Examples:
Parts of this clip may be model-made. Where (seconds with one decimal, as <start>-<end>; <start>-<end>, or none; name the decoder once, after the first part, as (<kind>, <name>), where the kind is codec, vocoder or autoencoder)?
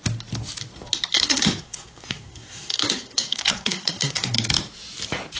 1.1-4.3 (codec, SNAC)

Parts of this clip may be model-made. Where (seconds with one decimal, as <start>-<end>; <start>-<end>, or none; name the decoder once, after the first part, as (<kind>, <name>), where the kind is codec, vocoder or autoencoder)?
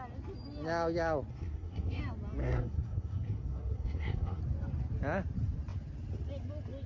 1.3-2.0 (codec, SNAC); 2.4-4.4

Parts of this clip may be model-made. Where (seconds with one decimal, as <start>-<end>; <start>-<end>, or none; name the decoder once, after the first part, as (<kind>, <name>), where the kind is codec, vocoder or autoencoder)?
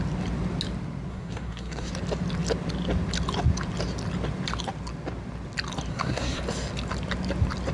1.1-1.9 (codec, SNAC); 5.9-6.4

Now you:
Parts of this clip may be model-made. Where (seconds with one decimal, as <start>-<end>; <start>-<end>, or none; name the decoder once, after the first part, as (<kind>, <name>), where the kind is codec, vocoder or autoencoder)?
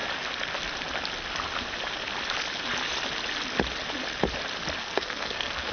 4.8-5.7 (codec, SNAC)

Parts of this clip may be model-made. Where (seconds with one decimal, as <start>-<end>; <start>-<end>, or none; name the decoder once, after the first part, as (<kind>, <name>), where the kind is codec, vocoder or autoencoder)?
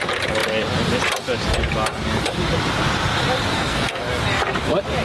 3.5-4.0 (codec, SNAC)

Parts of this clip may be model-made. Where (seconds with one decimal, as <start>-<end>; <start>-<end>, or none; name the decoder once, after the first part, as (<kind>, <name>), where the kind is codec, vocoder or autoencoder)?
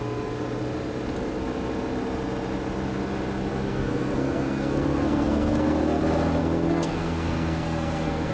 3.5-6.0 (codec, SNAC); 6.4-8.3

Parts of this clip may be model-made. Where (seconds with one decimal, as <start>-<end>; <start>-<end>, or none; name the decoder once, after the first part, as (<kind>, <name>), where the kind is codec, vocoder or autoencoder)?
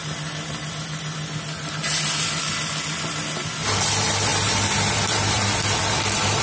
none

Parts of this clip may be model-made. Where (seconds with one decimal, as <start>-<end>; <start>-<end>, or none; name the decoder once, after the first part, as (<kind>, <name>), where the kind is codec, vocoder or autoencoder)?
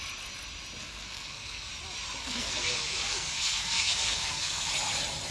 0.8-1.7 (codec, SNAC); 2.2-4.7